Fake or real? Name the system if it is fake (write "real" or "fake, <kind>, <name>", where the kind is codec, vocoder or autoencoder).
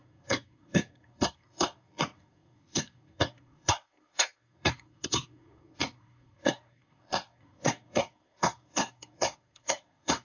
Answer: fake, codec, SNAC